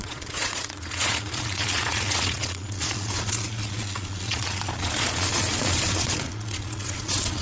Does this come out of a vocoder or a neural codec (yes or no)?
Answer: yes